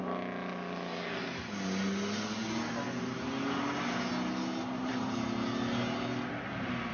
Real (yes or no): yes